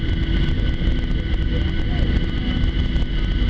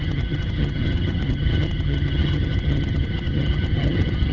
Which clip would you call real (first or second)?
first